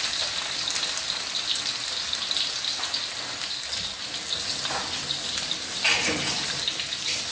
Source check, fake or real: real